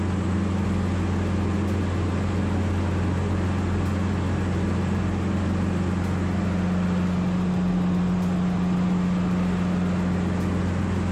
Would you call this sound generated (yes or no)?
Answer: no